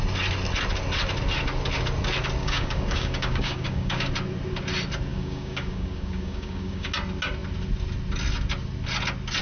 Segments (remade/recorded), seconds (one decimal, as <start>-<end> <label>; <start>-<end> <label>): 0.0-2.4 recorded; 2.4-4.1 remade; 4.1-5.1 recorded; 5.1-6.9 remade; 6.9-9.4 recorded